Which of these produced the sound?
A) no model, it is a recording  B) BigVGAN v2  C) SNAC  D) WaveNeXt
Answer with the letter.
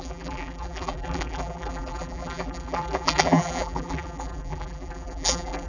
B